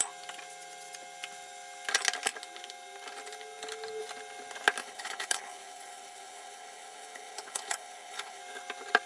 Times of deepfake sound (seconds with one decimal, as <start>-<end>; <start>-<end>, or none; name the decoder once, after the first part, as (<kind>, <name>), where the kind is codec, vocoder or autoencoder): 4.8-8.4 (codec, HILCodec)